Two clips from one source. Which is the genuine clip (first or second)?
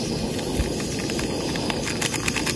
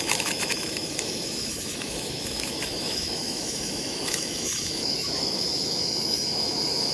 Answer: first